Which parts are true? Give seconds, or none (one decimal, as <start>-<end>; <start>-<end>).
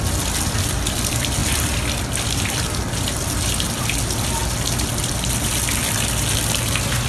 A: 0.0-7.1